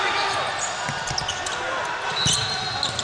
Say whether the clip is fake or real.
real